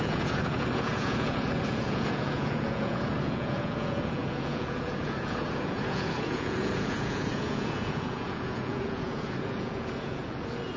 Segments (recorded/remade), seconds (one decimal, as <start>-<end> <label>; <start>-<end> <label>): 0.0-10.8 remade